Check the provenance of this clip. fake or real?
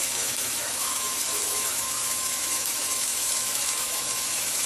fake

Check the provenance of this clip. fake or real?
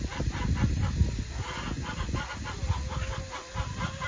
real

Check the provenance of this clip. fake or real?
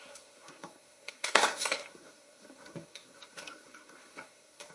fake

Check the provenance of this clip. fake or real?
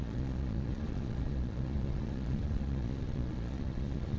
fake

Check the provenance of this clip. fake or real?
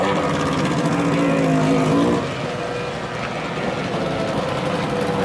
real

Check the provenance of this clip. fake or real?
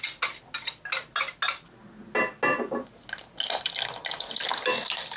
real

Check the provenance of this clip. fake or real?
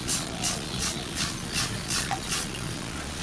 fake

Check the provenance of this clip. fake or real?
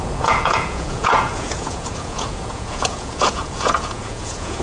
fake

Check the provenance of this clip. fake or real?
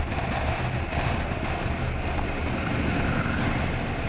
real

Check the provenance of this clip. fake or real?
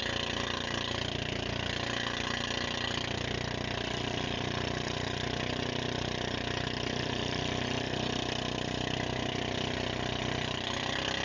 real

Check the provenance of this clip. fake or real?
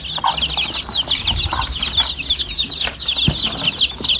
real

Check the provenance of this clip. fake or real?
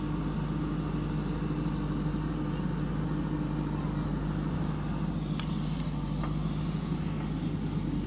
real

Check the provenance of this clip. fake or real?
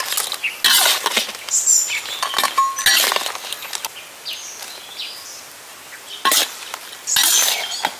real